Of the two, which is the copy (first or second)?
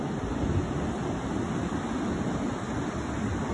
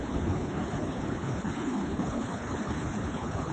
second